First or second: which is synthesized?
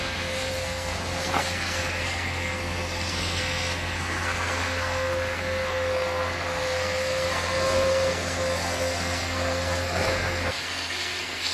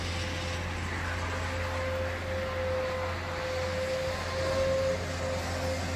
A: first